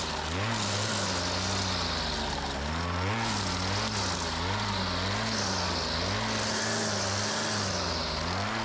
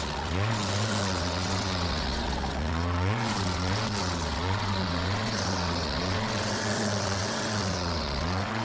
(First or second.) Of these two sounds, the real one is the first